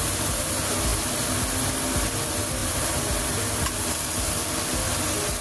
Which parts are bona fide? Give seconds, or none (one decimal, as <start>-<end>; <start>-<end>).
0.0-5.4